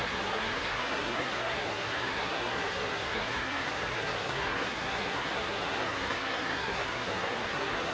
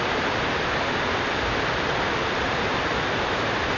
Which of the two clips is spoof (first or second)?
first